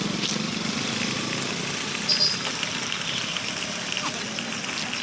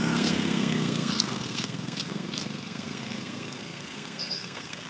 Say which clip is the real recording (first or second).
first